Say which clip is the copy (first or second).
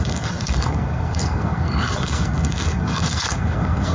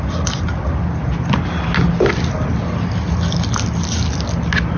first